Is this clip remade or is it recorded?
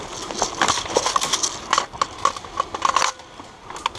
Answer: recorded